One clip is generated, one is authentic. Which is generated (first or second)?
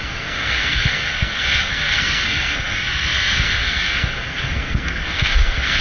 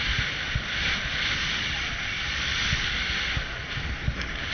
first